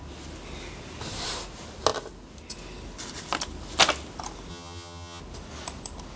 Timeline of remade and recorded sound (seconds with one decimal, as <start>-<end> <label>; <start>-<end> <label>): 0.0-4.5 recorded; 4.5-5.2 remade; 5.2-6.2 recorded